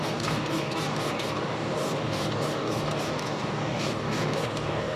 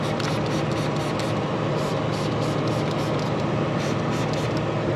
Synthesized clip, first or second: first